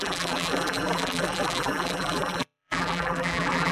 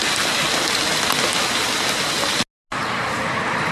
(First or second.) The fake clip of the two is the first